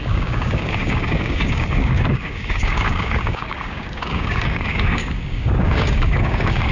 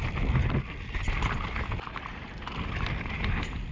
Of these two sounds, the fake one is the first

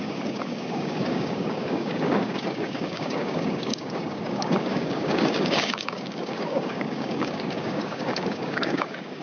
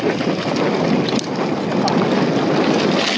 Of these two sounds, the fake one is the first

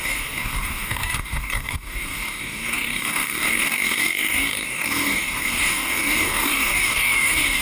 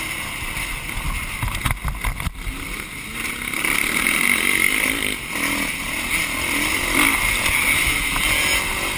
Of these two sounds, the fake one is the first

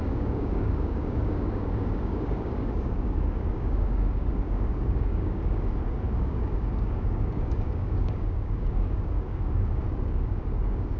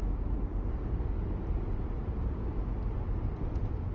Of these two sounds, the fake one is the first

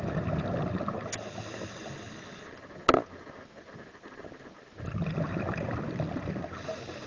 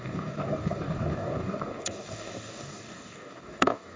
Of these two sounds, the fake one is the second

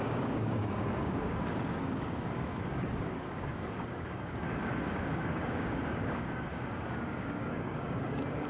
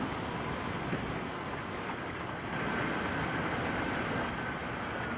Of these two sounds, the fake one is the first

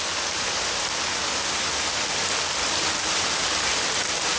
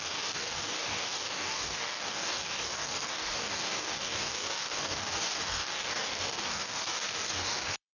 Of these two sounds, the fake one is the second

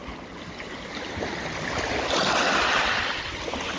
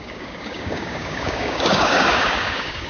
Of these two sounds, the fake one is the second